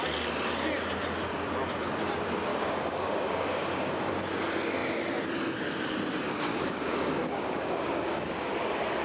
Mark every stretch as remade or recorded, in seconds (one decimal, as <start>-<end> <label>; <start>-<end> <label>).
0.0-2.5 recorded; 2.5-4.1 remade; 4.1-6.5 recorded; 6.5-8.5 remade; 8.5-9.0 recorded